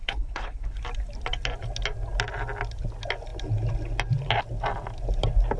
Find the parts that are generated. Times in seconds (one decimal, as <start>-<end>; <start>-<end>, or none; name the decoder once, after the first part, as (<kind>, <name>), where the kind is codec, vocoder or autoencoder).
0.0-0.8 (codec, HILCodec)